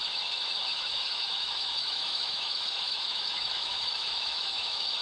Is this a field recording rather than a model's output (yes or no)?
no